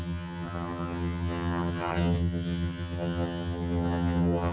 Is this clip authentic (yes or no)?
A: no